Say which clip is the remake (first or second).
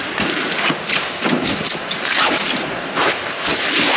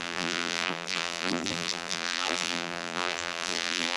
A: second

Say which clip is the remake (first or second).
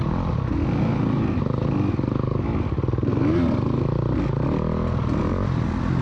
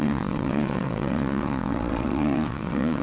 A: second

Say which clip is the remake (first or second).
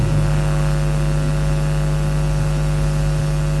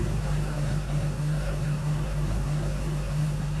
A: second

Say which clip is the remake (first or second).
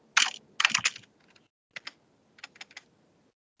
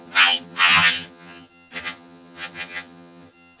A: second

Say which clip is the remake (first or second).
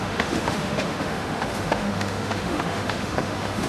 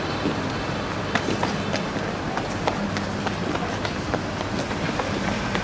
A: first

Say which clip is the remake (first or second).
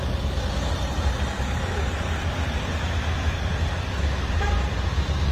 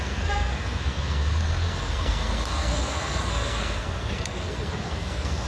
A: second